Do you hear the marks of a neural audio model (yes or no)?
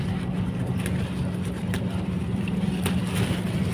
no